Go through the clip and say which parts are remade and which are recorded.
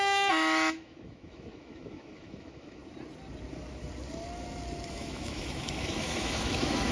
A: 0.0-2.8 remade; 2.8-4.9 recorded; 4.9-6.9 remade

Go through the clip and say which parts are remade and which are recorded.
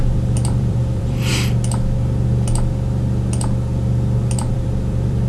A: 0.0-1.3 remade; 1.3-4.5 recorded; 4.5-5.3 remade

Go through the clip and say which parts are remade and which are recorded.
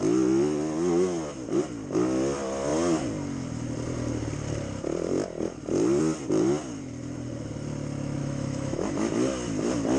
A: 0.0-8.2 recorded; 8.2-9.1 remade; 9.1-10.0 recorded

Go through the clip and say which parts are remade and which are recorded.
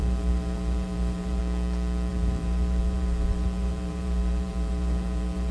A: 0.0-1.4 remade; 1.4-2.1 recorded; 2.1-5.5 remade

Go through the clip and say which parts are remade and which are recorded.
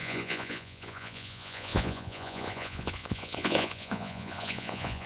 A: 0.0-5.1 remade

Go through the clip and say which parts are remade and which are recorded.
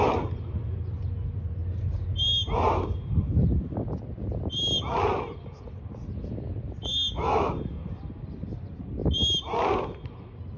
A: 0.0-6.8 recorded; 6.8-7.5 remade; 7.5-10.6 recorded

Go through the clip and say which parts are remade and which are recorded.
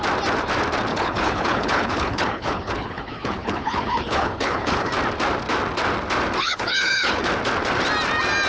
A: 0.0-0.9 recorded; 0.9-4.9 remade; 4.9-6.4 recorded; 6.4-7.3 remade; 7.3-8.5 recorded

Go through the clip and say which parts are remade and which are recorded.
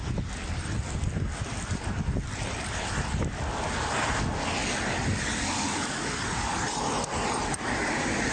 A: 0.0-5.3 recorded; 5.3-6.2 remade; 6.2-8.3 recorded